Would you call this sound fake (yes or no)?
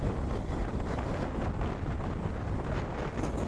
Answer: no